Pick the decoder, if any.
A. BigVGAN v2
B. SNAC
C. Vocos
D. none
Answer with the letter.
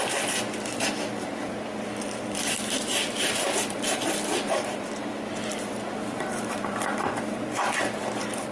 A